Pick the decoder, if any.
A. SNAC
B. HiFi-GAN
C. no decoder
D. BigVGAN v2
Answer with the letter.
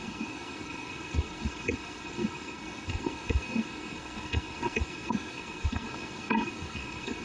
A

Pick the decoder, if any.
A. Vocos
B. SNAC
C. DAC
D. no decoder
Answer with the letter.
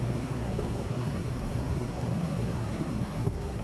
B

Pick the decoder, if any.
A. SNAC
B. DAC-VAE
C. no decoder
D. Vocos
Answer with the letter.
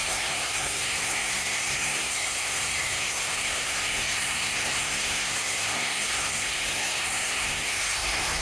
A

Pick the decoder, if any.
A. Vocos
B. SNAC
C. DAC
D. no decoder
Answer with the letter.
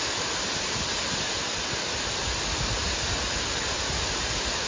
D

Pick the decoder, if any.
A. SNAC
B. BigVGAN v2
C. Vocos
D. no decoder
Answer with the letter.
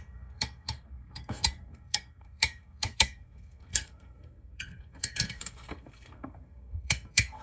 A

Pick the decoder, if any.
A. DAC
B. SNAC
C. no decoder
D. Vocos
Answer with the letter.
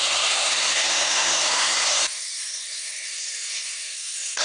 B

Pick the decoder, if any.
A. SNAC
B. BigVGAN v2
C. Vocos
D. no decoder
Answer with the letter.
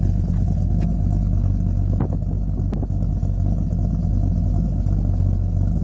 D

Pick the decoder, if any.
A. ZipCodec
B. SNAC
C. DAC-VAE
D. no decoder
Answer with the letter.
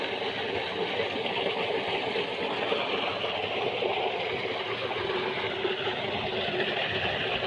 D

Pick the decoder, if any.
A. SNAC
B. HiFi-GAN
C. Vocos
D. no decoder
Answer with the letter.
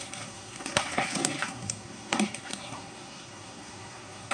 A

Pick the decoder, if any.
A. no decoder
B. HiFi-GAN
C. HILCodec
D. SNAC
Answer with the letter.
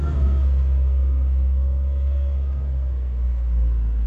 D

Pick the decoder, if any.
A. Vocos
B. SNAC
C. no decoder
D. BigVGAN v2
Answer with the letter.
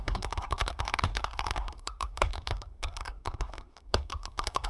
B